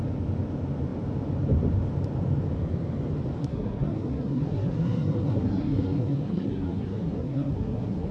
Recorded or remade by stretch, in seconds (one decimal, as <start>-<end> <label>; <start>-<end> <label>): 0.0-3.4 recorded; 3.4-8.1 remade